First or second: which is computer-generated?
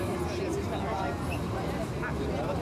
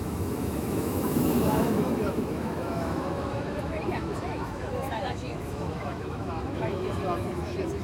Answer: second